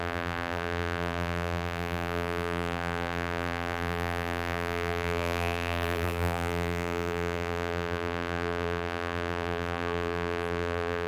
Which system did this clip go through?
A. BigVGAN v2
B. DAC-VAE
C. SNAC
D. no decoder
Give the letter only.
A